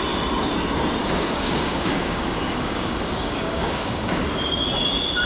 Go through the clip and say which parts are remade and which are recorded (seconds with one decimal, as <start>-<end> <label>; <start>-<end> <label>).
0.0-1.0 recorded; 1.0-4.2 remade; 4.2-5.3 recorded